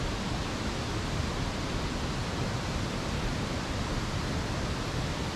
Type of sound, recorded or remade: recorded